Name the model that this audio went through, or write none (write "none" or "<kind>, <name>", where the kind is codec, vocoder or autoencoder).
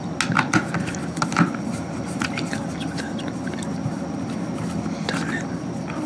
none